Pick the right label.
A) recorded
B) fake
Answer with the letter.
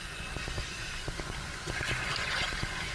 B